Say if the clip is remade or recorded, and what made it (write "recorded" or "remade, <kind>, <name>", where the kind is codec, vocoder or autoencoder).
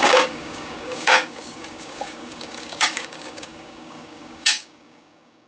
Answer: remade, codec, DAC